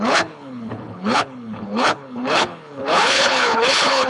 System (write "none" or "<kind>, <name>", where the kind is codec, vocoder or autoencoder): codec, HILCodec